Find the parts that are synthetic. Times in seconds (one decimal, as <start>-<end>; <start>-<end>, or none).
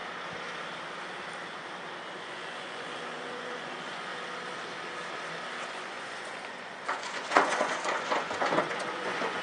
2.2-4.1; 5.7-9.4